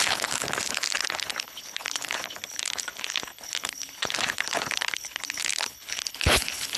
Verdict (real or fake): fake